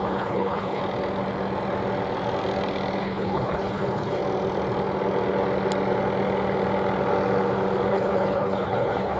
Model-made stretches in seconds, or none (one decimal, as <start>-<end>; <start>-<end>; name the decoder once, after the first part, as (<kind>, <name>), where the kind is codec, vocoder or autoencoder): 0.0-0.8 (codec, HILCodec); 3.0-4.2; 7.9-9.2